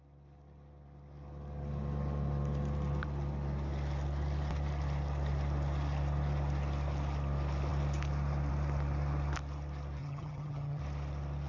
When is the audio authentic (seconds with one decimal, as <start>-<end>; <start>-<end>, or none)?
0.0-10.0; 10.8-11.5